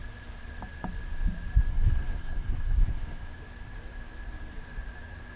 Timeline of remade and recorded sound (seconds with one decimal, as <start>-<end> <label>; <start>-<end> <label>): 0.0-1.7 recorded; 1.7-3.3 remade; 3.3-5.4 recorded